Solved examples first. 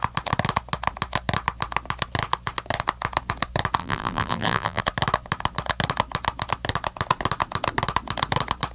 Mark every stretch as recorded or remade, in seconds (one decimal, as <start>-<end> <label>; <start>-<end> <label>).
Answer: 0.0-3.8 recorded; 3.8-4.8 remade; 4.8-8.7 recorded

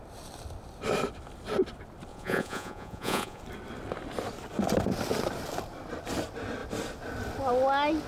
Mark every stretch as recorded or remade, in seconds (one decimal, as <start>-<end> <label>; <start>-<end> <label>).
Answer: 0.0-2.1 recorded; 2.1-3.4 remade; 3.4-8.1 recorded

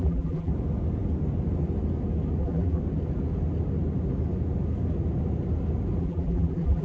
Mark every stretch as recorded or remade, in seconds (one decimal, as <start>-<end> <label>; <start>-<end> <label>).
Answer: 0.0-0.5 remade; 0.5-2.4 recorded; 2.4-2.8 remade; 2.8-6.0 recorded; 6.0-6.8 remade